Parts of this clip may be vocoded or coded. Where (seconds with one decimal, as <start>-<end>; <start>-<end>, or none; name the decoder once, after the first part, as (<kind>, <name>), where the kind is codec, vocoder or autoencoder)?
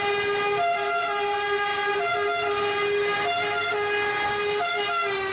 none